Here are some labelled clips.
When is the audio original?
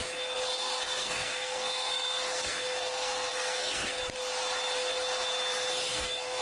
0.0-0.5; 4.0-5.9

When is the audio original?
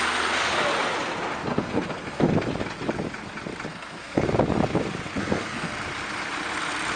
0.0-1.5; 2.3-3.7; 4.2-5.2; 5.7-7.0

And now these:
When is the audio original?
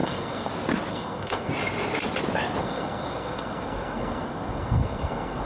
0.5-0.9; 1.5-2.6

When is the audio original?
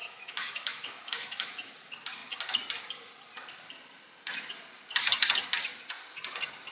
1.7-6.7